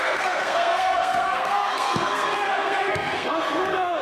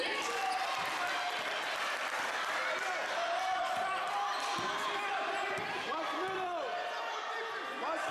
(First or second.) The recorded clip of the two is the second